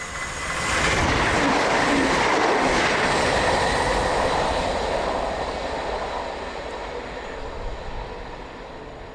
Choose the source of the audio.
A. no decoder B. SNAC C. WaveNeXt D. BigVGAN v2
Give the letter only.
A